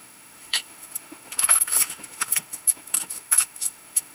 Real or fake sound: fake